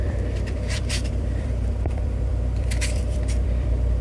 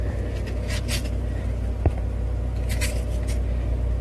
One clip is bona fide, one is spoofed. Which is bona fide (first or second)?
second